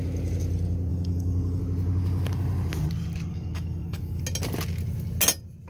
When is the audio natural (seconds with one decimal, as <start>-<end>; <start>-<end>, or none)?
0.0-0.9; 1.6-3.3; 4.2-5.7